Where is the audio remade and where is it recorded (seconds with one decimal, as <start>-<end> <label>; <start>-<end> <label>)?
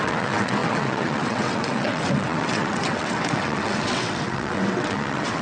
0.0-5.4 remade